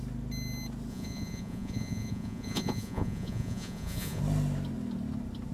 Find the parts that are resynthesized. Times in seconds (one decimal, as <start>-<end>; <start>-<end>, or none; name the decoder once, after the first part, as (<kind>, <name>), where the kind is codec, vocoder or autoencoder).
0.9-4.2 (vocoder, Vocos)